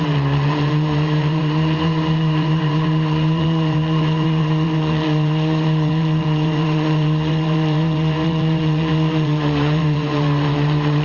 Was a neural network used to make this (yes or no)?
yes